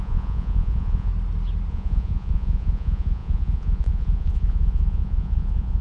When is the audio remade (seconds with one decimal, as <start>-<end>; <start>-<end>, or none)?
0.0-1.1; 1.7-5.8